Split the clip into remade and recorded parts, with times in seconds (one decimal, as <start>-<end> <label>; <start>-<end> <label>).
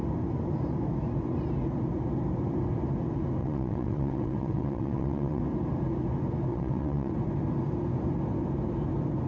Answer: 0.0-3.4 recorded; 3.4-5.4 remade; 5.4-6.5 recorded; 6.5-7.1 remade; 7.1-9.3 recorded